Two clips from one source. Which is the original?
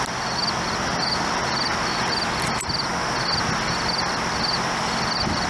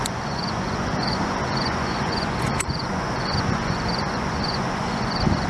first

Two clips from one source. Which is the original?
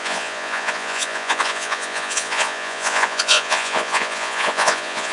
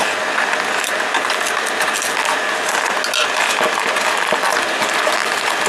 second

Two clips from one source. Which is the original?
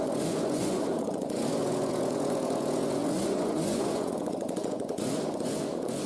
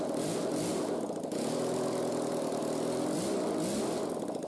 second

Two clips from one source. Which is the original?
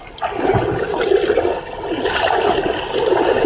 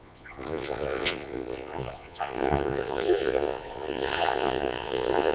first